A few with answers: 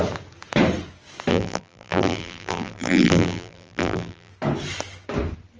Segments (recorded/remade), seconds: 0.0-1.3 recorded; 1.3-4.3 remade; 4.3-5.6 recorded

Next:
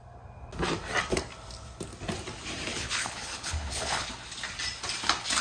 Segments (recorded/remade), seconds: 0.0-2.7 recorded; 2.7-4.1 remade; 4.1-5.4 recorded

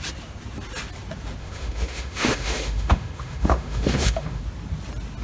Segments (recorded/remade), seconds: 0.0-1.4 recorded; 1.4-4.4 remade; 4.4-5.2 recorded

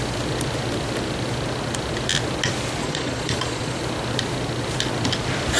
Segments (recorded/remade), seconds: 0.0-2.8 recorded; 2.8-3.8 remade; 3.8-5.6 recorded

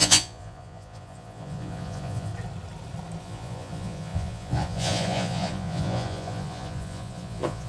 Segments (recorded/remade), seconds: 0.0-2.3 remade; 2.3-3.2 recorded; 3.2-7.7 remade